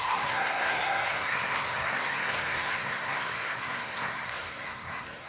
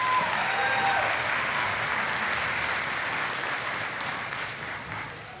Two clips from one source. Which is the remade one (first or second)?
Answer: first